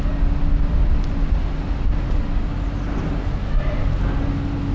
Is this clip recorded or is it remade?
recorded